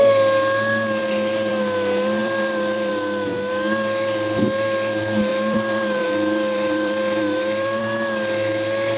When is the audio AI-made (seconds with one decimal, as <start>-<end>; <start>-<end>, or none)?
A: 2.2-2.9; 5.3-7.8